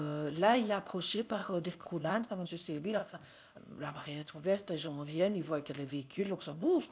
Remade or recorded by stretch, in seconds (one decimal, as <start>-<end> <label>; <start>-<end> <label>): 0.0-6.9 remade